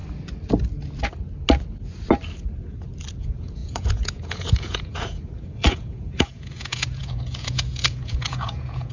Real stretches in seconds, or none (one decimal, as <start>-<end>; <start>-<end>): 0.0-3.2